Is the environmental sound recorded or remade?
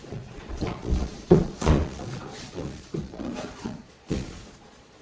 remade